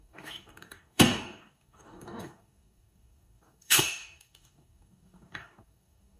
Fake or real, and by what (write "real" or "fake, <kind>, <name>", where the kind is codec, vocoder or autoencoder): fake, codec, DAC